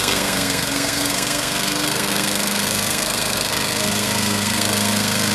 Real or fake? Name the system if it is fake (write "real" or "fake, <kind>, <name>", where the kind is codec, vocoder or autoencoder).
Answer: fake, codec, SNAC